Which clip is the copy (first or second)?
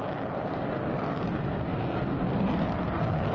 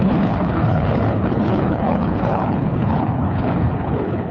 second